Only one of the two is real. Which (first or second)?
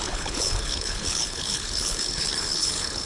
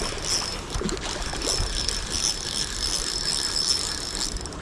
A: second